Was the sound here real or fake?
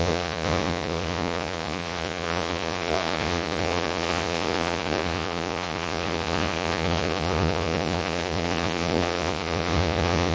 fake